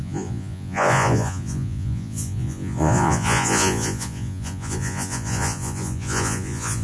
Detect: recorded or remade remade